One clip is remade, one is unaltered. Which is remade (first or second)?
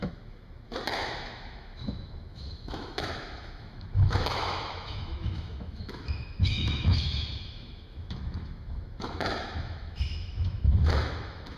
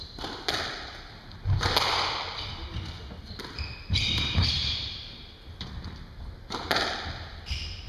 first